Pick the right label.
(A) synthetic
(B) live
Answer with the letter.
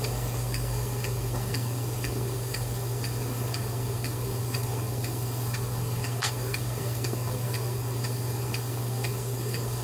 A